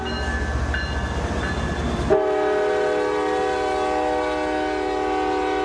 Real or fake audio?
real